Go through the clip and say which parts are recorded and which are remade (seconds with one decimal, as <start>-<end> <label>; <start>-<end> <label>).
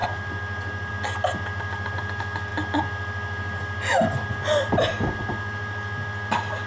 0.0-6.7 recorded